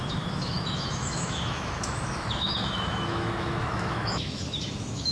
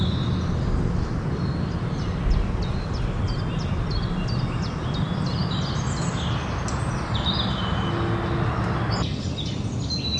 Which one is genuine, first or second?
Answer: second